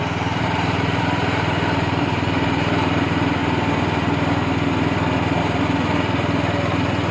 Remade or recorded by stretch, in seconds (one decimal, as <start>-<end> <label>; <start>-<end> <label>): 0.0-3.4 remade; 3.4-5.4 recorded; 5.4-7.1 remade